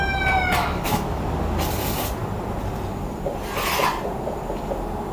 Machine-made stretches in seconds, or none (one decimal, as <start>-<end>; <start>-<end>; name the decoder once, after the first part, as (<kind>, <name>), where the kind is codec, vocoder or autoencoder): 0.6-1.2 (autoencoder, DAC-VAE)